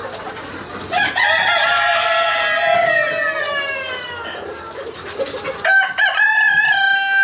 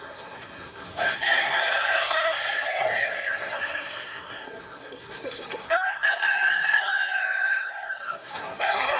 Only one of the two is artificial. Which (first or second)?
second